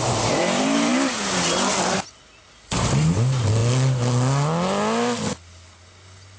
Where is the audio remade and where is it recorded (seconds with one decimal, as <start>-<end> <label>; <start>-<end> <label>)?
0.0-6.4 recorded